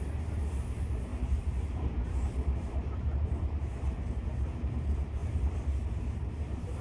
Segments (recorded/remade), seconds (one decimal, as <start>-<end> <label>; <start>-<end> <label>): 0.0-5.2 remade; 5.2-5.9 recorded; 5.9-6.8 remade

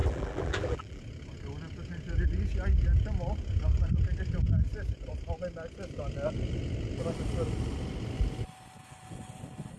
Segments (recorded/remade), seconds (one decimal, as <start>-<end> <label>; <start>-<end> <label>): 0.0-1.0 remade; 1.0-9.8 recorded

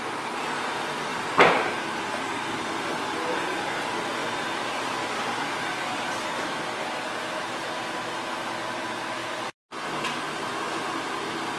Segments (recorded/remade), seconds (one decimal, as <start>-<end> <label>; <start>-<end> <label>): 0.0-1.1 recorded; 1.1-3.0 remade; 3.0-4.2 recorded; 4.2-6.1 remade; 6.1-11.6 recorded

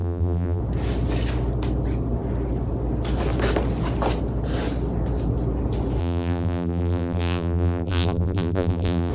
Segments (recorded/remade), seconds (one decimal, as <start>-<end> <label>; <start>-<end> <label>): 0.0-0.6 remade; 0.6-6.0 recorded; 6.0-9.1 remade

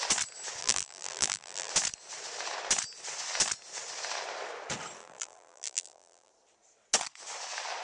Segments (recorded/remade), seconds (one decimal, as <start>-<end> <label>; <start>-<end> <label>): 0.0-0.6 recorded; 0.6-1.7 remade; 1.7-5.0 recorded; 5.0-6.3 remade; 6.3-7.8 recorded

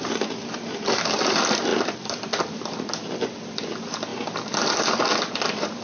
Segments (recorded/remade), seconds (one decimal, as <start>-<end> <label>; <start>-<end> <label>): 0.0-1.7 recorded; 1.7-2.3 remade; 2.3-4.1 recorded; 4.1-5.3 remade; 5.3-5.8 recorded

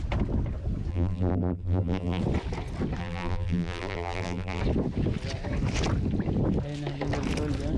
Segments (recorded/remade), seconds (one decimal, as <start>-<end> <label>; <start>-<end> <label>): 0.0-0.9 recorded; 0.9-2.2 remade; 2.2-3.0 recorded; 3.0-4.6 remade; 4.6-7.8 recorded